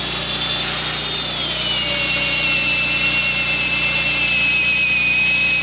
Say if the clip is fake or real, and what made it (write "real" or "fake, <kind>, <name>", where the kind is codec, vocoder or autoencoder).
real